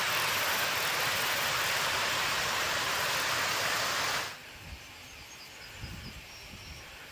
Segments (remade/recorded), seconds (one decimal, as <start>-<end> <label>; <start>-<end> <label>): 0.0-7.1 recorded